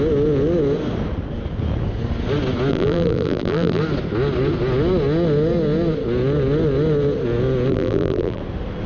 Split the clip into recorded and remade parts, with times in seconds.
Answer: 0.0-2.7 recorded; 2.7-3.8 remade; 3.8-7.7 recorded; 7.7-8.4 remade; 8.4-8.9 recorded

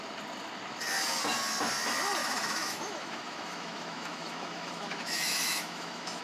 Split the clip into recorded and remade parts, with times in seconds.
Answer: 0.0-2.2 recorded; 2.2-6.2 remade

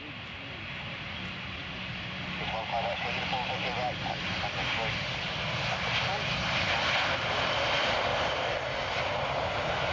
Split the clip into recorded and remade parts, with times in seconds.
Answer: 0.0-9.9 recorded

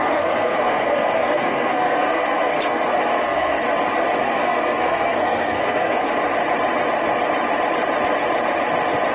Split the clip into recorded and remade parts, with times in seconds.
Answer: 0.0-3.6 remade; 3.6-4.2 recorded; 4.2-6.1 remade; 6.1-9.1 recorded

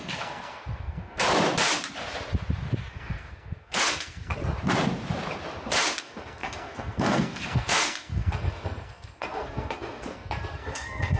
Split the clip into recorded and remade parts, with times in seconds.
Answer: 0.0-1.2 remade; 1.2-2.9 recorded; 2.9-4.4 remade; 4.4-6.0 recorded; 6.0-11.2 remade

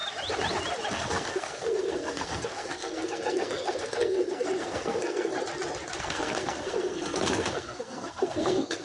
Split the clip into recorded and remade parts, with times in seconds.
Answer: 0.0-0.9 recorded; 0.9-5.3 remade; 5.3-6.0 recorded; 6.0-8.8 remade

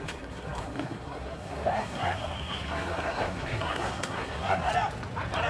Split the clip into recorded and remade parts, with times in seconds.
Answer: 0.0-4.7 remade; 4.7-5.5 recorded

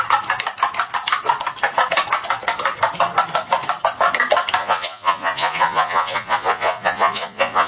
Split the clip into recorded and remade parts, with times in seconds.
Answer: 0.0-4.6 recorded; 4.6-7.7 remade